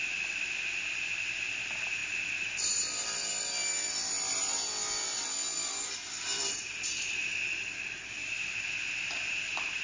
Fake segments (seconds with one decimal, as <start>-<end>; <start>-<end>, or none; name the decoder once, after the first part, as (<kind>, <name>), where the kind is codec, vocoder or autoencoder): none

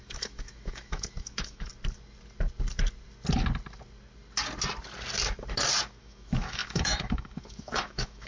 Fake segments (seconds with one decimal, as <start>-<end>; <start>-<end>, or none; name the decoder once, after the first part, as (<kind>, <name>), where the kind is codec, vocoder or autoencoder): 0.0-1.7 (autoencoder, DAC-VAE); 6.0-8.3